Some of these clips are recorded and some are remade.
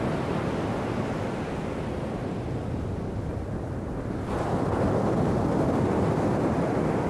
recorded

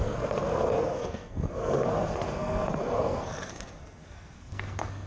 remade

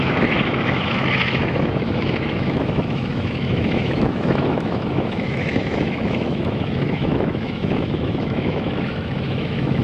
remade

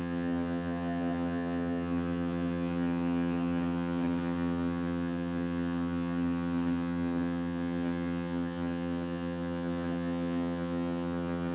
remade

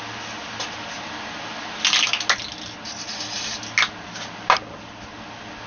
recorded